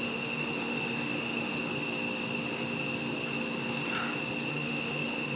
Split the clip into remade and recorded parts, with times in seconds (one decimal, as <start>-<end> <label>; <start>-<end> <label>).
0.0-1.7 remade; 1.7-4.5 recorded; 4.5-5.4 remade